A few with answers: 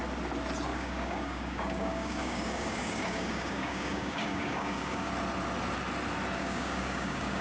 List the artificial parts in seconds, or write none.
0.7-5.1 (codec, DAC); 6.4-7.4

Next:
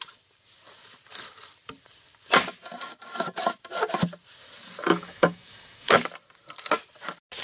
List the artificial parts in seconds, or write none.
4.9-5.9 (codec, DAC)

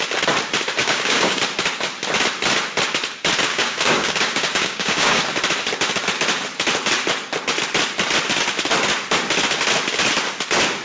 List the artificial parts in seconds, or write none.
0.8-1.4 (codec, DAC); 3.5-5.2